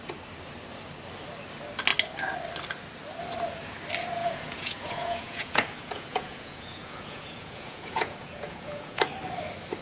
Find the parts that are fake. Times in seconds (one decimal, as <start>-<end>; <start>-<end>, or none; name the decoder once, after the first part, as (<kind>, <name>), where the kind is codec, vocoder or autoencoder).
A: 4.2-9.0 (vocoder, Vocos)